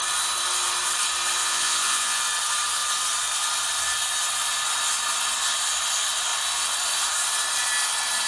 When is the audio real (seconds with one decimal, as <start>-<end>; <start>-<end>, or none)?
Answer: 0.0-1.4; 2.2-8.3